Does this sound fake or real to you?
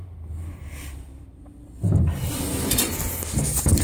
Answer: fake